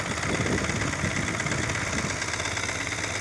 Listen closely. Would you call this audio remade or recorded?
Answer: recorded